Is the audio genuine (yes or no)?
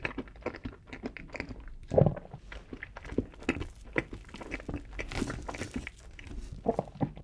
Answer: yes